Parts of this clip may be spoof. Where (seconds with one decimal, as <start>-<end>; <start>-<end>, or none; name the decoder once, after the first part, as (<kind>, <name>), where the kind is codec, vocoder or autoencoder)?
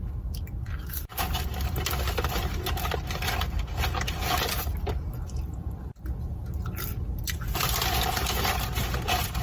none